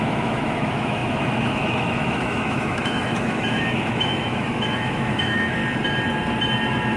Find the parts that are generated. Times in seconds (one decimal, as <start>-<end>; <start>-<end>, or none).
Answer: 0.0-5.6